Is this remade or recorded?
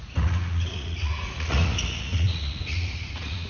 remade